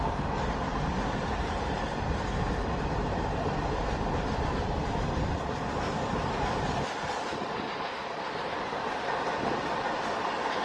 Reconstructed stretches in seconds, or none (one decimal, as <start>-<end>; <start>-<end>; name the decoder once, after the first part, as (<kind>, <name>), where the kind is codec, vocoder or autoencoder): 0.7-5.7 (vocoder, BigVGAN v2)